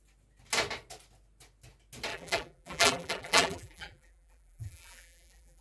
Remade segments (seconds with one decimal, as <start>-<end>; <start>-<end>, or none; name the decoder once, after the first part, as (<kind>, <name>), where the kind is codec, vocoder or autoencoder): 2.1-5.6 (vocoder, BigVGAN v2)